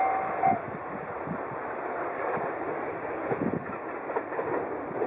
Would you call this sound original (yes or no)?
yes